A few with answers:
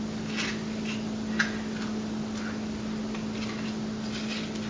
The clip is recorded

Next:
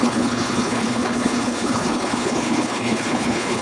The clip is remade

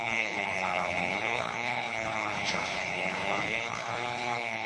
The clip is remade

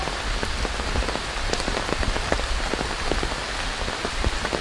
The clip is recorded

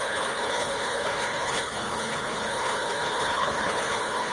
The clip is remade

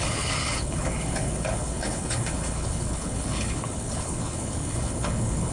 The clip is remade